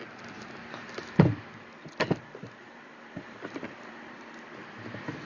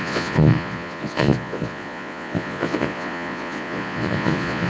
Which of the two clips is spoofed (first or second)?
second